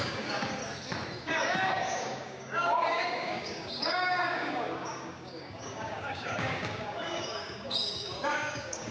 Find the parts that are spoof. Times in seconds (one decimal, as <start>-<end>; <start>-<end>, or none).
0.0-0.6; 1.2-8.9